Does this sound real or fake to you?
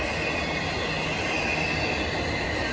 real